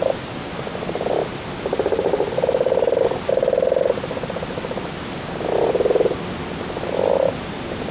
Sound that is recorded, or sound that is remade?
recorded